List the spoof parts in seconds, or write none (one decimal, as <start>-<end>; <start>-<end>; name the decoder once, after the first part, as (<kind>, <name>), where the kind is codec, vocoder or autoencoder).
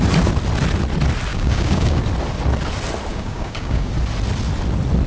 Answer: 1.3-2.0 (codec, DAC); 3.1-3.9